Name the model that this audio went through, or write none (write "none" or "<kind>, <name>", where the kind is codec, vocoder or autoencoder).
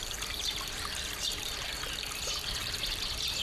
vocoder, BigVGAN v2